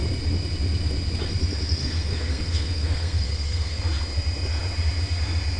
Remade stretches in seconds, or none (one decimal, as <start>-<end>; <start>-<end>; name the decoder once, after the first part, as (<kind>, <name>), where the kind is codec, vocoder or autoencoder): 1.8-3.8 (codec, SNAC)